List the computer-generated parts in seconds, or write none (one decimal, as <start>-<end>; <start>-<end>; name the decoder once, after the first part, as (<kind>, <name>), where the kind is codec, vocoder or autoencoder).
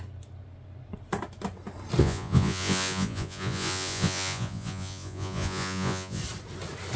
2.0-6.2 (vocoder, Vocos)